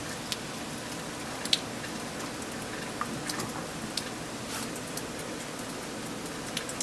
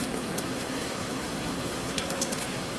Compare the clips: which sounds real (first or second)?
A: first